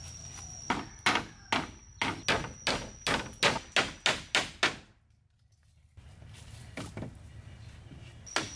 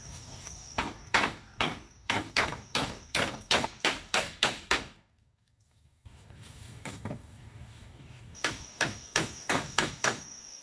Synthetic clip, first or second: second